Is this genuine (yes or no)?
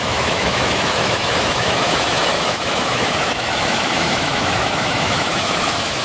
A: no